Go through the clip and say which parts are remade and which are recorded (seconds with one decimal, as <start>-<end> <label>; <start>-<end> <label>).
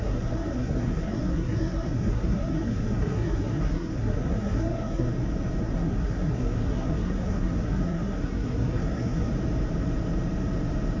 0.0-5.1 remade; 5.1-5.6 recorded; 5.6-9.3 remade; 9.3-11.0 recorded